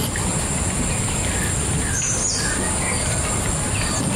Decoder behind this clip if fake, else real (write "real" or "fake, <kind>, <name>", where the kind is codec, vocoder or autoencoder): real